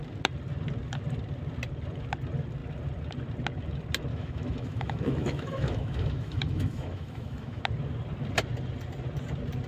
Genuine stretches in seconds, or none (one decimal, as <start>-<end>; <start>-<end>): 0.0-4.1; 7.6-9.7